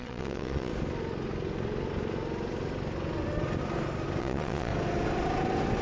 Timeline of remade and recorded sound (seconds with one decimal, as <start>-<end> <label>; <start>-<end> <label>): 0.0-0.7 remade; 0.7-4.2 recorded; 4.2-4.7 remade; 4.7-5.8 recorded